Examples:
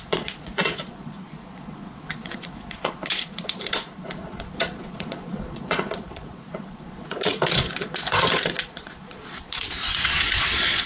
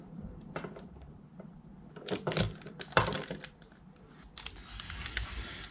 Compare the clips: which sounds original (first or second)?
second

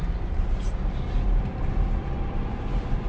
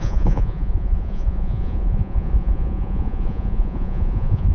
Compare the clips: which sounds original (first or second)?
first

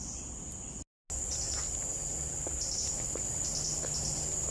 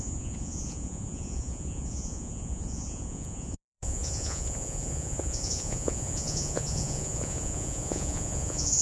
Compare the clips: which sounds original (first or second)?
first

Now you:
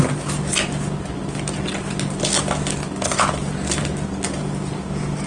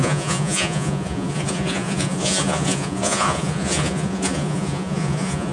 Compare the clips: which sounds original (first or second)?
first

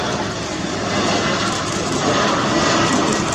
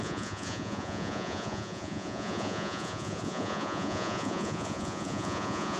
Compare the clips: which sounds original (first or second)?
first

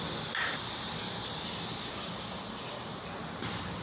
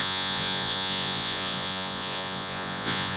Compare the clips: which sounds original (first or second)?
first